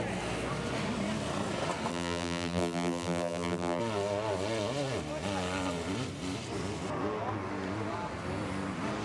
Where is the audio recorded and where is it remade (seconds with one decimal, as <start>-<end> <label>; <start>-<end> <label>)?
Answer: 0.0-1.9 recorded; 1.9-3.8 remade; 3.8-9.0 recorded